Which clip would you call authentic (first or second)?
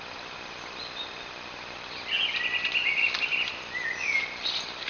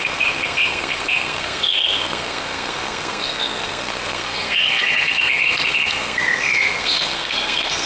first